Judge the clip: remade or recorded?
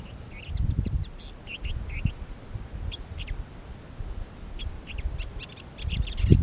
recorded